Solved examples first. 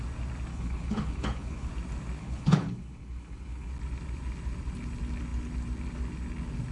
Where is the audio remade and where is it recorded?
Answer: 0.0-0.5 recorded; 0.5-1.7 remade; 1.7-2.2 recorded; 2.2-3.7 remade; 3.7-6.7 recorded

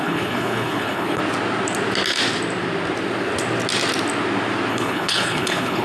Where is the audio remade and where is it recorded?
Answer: 0.0-1.2 remade; 1.2-4.7 recorded; 4.7-5.8 remade

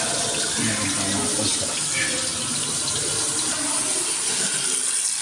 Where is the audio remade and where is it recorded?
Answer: 0.0-5.2 recorded

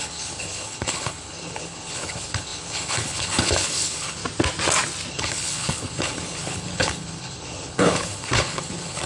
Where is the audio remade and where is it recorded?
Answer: 0.0-4.2 remade; 4.2-5.1 recorded; 5.1-9.1 remade